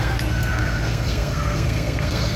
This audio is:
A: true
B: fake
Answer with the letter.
B